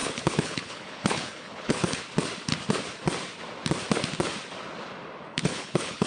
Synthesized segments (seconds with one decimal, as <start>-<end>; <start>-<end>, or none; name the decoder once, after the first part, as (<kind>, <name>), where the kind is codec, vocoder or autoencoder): 0.0-2.0 (codec, HILCodec); 5.3-6.1